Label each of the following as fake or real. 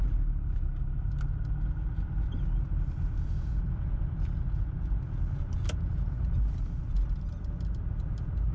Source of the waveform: real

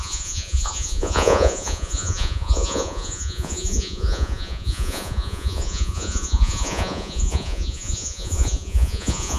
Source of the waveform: fake